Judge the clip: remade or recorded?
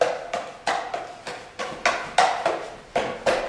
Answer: recorded